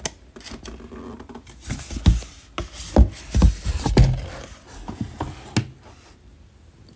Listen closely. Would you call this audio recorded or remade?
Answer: recorded